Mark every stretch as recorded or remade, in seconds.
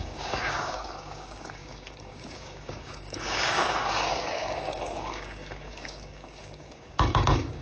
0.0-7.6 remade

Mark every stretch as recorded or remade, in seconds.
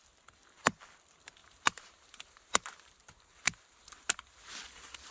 0.0-1.4 recorded; 1.4-4.5 remade; 4.5-5.1 recorded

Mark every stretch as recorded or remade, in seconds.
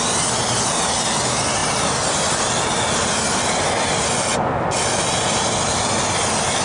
0.0-6.6 recorded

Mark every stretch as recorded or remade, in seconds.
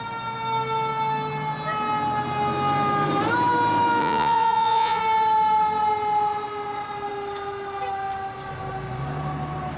0.0-4.0 recorded; 4.0-5.0 remade; 5.0-9.8 recorded